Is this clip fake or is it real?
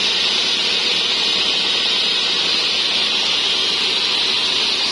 real